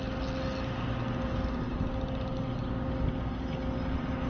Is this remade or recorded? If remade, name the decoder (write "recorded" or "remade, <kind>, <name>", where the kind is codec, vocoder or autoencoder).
recorded